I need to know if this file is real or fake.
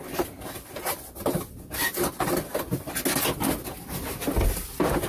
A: real